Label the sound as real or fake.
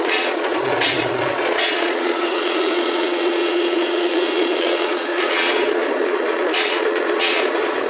fake